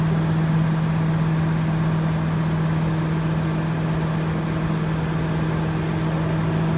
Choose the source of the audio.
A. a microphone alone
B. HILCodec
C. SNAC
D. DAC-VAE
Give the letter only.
A